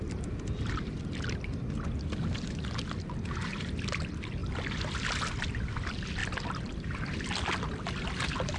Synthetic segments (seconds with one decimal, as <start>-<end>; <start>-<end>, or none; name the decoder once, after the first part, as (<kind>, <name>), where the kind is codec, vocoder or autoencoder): 6.2-7.2 (vocoder, BigVGAN v2)